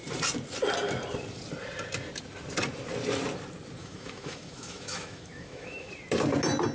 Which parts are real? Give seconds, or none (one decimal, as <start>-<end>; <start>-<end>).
0.0-3.8; 5.9-6.7